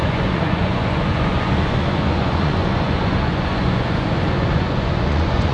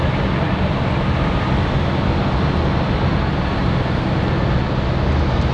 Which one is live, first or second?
second